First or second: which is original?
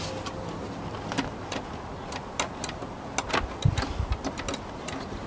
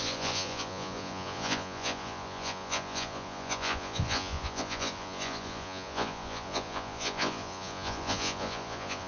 first